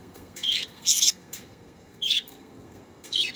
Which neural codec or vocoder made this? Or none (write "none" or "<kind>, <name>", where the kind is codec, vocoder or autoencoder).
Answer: codec, SNAC